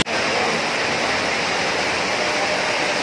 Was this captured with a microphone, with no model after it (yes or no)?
yes